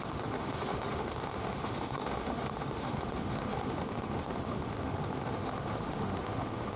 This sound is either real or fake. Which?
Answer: fake